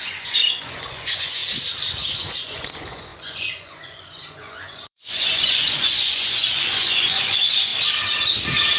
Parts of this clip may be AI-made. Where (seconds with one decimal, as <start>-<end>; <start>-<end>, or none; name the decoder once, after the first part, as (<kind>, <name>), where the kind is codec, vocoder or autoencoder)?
0.0-1.4 (vocoder, Vocos); 2.1-7.7